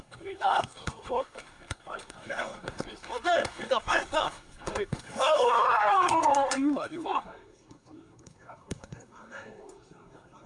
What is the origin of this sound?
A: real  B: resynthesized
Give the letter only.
B